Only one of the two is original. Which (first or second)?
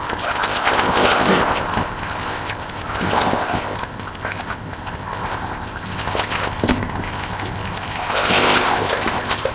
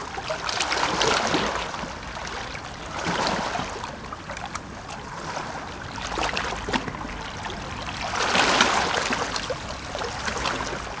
second